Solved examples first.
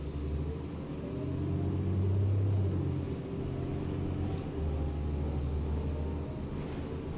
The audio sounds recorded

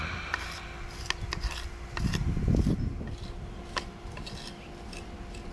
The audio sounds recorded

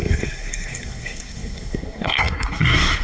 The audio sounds remade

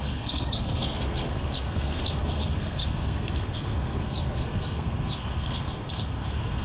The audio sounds remade